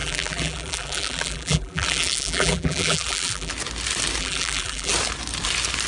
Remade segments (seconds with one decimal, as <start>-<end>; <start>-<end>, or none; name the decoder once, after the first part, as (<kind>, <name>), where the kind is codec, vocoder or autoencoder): 0.0-3.5 (vocoder, BigVGAN v2); 4.2-4.9

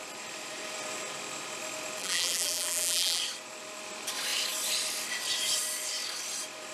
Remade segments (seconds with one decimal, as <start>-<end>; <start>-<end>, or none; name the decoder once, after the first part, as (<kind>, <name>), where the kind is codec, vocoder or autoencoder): 2.0-3.2 (vocoder, BigVGAN v2)

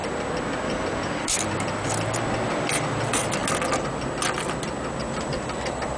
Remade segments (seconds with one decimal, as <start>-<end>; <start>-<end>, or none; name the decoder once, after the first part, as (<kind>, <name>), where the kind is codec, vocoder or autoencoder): 1.2-3.4 (vocoder, BigVGAN v2); 5.0-6.0